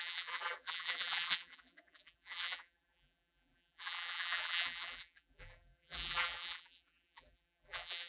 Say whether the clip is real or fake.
fake